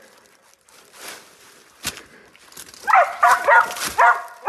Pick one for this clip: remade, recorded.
recorded